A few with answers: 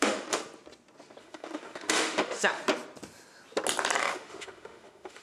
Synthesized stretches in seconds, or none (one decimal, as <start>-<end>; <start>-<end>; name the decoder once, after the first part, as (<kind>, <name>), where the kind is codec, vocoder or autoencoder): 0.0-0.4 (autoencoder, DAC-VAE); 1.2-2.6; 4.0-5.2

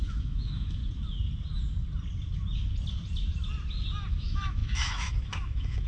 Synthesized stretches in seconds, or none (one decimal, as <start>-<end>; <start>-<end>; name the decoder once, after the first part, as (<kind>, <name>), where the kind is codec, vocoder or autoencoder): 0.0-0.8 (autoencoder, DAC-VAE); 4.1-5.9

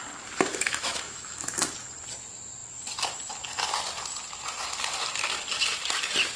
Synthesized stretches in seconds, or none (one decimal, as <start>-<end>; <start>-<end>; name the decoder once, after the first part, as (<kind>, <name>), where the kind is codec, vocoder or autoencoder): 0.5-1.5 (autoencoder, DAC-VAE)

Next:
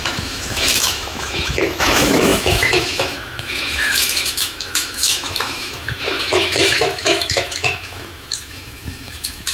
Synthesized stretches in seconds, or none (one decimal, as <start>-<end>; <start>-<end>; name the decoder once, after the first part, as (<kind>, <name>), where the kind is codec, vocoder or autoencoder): 0.0-9.5 (autoencoder, DAC-VAE)

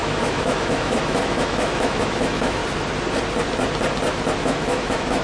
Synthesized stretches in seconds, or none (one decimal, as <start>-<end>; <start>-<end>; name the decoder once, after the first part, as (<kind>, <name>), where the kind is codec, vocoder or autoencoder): 0.0-2.6 (autoencoder, DAC-VAE); 4.4-5.2

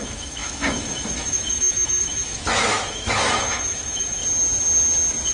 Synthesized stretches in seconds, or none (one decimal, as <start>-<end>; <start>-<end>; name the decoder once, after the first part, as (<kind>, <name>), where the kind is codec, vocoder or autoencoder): 0.0-4.2 (autoencoder, DAC-VAE)

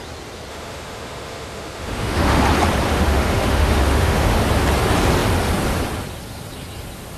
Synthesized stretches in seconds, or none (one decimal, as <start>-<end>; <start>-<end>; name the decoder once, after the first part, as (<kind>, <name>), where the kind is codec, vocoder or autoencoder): 0.5-2.4 (autoencoder, DAC-VAE); 2.9-4.4